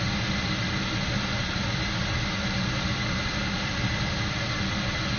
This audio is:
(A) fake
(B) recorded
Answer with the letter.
B